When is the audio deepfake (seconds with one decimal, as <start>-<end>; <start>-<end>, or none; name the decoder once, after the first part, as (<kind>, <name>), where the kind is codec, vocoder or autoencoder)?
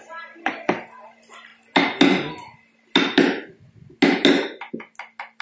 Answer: none